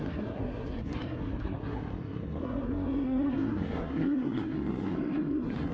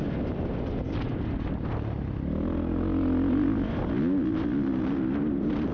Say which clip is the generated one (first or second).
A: first